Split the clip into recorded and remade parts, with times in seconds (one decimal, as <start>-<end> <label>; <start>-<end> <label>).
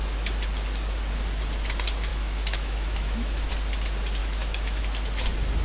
0.0-2.1 recorded; 2.1-3.5 remade; 3.5-4.2 recorded; 4.2-4.8 remade; 4.8-5.6 recorded